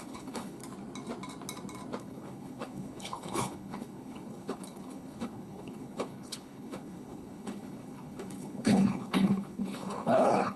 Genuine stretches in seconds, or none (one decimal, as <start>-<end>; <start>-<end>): 0.6-2.0